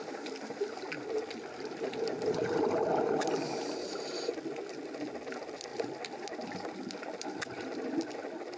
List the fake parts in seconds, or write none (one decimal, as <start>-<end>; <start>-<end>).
none